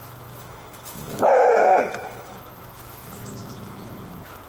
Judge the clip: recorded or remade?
remade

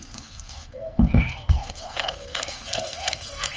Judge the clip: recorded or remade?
remade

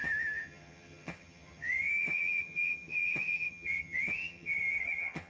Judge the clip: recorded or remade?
remade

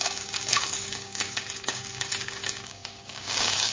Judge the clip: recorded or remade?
remade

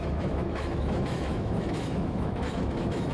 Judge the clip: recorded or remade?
remade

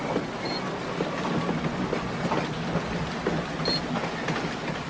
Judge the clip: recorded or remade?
recorded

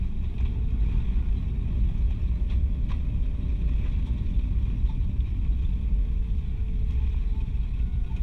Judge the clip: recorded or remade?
recorded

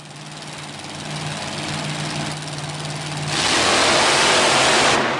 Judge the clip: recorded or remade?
recorded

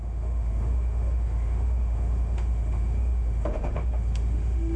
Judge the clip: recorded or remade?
remade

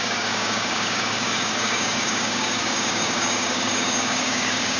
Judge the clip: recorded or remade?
remade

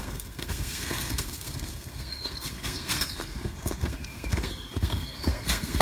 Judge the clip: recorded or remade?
remade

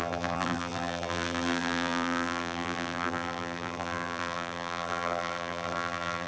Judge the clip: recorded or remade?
remade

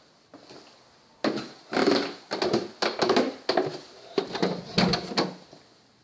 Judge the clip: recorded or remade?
recorded